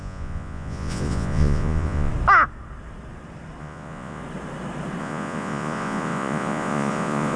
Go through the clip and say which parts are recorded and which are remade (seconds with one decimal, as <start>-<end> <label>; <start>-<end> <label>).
0.0-2.1 remade; 2.1-3.6 recorded; 3.6-4.2 remade; 4.2-5.0 recorded; 5.0-7.4 remade